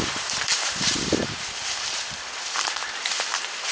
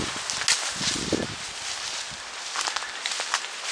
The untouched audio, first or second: second